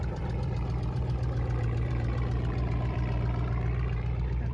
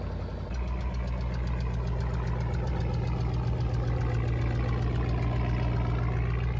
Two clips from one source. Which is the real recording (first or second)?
second